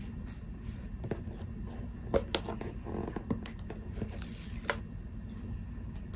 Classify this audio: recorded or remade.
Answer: recorded